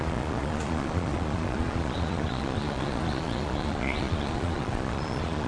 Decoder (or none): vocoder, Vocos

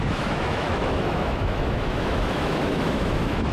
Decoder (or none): autoencoder, DAC-VAE